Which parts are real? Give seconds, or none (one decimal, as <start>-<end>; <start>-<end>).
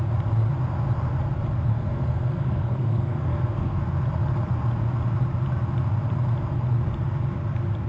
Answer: 0.0-1.7; 3.8-7.9